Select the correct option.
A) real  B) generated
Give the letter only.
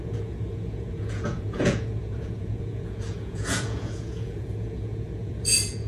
B